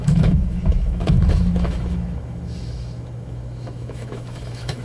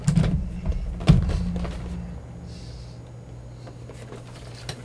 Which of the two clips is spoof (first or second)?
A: first